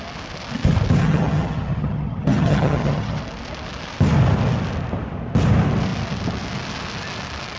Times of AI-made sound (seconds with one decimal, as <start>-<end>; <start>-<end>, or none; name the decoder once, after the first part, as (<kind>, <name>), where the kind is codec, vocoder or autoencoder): 1.0-3.2 (vocoder, HiFi-GAN)